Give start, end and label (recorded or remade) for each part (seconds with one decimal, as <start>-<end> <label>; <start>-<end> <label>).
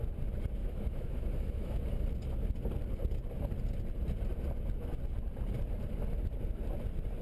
0.0-0.6 recorded; 0.6-1.7 remade; 1.7-7.2 recorded